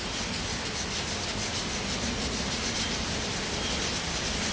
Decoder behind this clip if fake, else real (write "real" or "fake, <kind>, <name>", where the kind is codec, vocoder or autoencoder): real